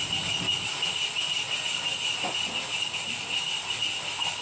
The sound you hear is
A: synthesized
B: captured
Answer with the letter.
B